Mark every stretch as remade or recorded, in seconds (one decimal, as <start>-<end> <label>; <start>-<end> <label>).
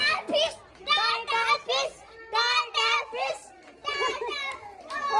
0.0-5.2 recorded